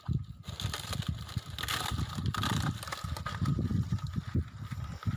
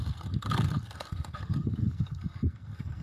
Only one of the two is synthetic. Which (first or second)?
second